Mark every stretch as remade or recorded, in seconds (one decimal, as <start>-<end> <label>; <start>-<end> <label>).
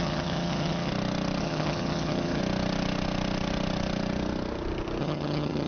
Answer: 0.0-0.9 remade; 0.9-1.4 recorded; 1.4-2.4 remade; 2.4-5.0 recorded; 5.0-5.7 remade